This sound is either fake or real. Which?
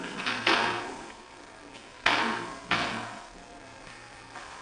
fake